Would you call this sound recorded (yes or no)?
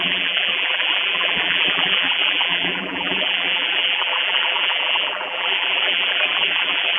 no